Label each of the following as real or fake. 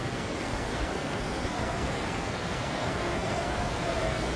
fake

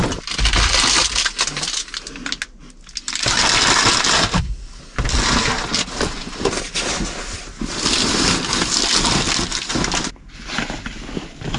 real